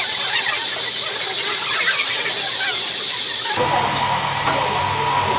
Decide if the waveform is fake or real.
real